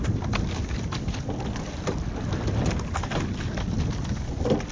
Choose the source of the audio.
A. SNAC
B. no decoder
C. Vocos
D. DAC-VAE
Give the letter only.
B